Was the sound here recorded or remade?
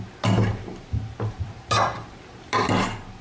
recorded